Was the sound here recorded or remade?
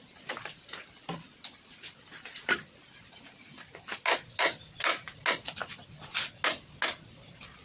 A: recorded